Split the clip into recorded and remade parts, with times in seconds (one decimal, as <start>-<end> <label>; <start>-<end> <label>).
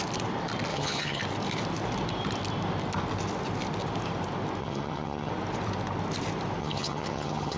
0.0-0.7 recorded; 0.7-1.2 remade; 1.2-4.6 recorded; 4.6-5.3 remade; 5.3-6.6 recorded; 6.6-7.6 remade